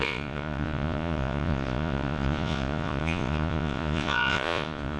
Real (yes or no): no